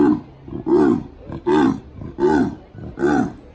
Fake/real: real